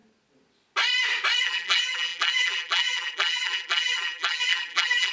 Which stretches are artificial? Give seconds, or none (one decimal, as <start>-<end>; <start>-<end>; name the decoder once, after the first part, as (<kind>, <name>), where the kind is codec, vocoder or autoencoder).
1.4-5.1 (vocoder, BigVGAN v2)